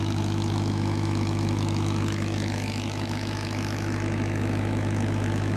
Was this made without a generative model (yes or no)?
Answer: no